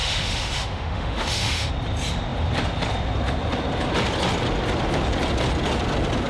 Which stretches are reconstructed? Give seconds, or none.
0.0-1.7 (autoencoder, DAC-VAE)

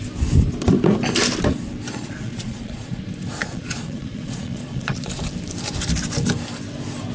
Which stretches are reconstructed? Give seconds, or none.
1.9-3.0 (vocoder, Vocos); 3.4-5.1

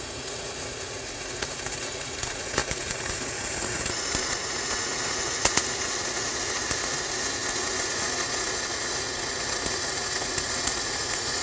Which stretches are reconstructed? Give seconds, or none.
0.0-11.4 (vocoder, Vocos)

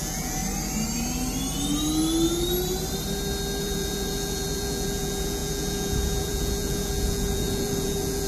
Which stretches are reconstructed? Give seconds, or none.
0.0-0.4 (vocoder, Vocos); 3.6-8.3

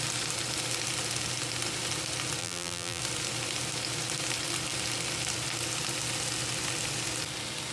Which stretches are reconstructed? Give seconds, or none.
2.4-3.0 (vocoder, BigVGAN v2)

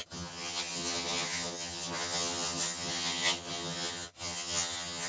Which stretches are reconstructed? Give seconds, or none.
0.0-5.1 (vocoder, HiFi-GAN)